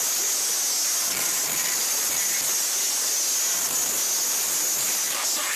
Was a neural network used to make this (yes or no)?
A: no